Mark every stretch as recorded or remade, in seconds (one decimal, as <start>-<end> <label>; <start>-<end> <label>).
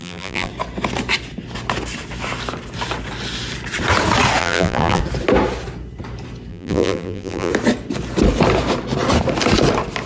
0.0-0.5 remade; 0.5-4.4 recorded; 4.4-5.0 remade; 5.0-6.5 recorded; 6.5-7.5 remade; 7.5-10.1 recorded